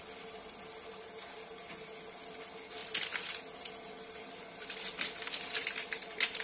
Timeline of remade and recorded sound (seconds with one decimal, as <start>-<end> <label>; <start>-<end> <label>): 0.0-2.8 recorded; 2.8-6.4 remade

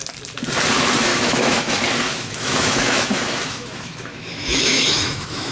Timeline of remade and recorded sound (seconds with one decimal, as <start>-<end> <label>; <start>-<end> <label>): 0.0-1.1 recorded; 1.1-1.7 remade; 1.7-2.1 recorded; 2.1-5.5 remade